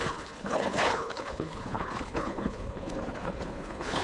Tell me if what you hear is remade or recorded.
remade